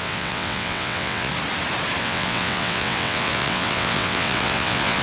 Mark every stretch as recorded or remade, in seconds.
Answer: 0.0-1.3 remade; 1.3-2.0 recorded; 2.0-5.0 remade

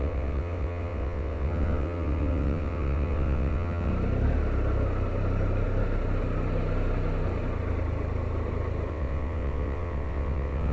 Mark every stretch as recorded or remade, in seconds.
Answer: 0.0-3.9 remade; 3.9-8.9 recorded; 8.9-10.7 remade

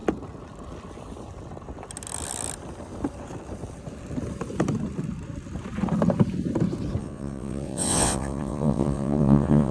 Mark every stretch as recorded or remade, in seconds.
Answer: 0.0-7.0 recorded; 7.0-9.7 remade

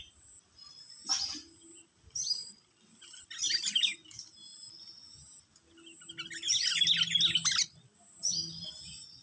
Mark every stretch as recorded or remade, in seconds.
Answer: 0.0-9.2 recorded

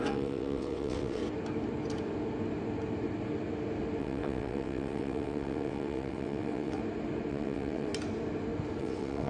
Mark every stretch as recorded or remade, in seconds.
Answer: 0.0-1.2 remade; 1.2-4.0 recorded; 4.0-6.8 remade; 6.8-7.3 recorded; 7.3-7.9 remade; 7.9-8.8 recorded; 8.8-9.3 remade